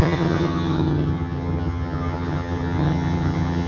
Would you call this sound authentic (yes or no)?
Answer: no